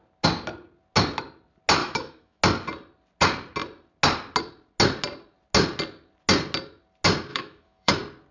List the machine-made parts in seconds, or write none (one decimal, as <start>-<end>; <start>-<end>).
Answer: 1.8-2.4; 7.3-7.9